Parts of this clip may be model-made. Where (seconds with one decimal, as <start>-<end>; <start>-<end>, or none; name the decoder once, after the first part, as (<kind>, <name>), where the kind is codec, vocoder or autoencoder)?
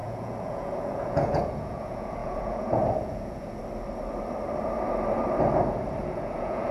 0.0-3.6 (vocoder, Vocos); 6.0-6.7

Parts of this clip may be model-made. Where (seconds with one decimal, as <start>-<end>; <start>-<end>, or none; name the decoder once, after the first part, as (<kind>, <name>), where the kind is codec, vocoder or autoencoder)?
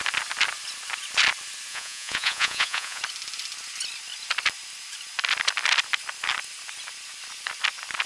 1.7-3.0 (vocoder, Vocos)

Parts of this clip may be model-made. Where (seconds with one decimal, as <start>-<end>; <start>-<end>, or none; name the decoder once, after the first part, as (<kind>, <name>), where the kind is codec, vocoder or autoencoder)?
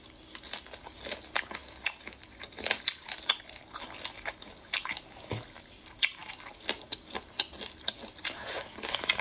none